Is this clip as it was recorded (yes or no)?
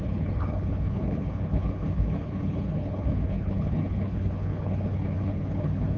no